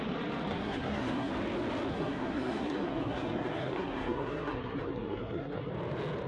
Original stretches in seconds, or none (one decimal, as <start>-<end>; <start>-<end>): 0.0-0.5; 1.3-1.9; 5.7-6.3